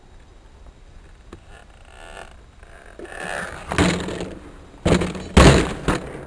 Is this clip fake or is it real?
real